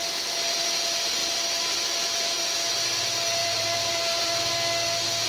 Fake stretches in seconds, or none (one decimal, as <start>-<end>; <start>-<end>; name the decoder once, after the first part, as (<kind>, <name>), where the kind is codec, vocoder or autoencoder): 3.4-4.5 (vocoder, BigVGAN v2)